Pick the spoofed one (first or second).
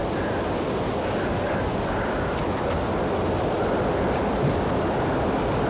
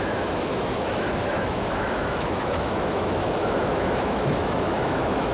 second